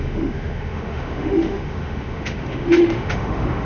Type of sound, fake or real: fake